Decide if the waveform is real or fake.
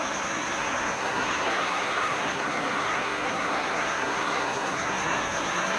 fake